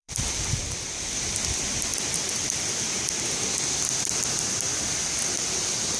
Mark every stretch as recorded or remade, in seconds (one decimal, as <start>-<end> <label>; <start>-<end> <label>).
0.0-1.1 remade; 1.1-1.9 recorded; 1.9-2.7 remade; 2.7-4.7 recorded; 4.7-6.0 remade